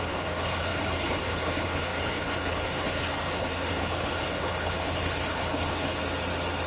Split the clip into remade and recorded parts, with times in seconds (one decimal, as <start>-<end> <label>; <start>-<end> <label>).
0.0-6.0 remade; 6.0-6.7 recorded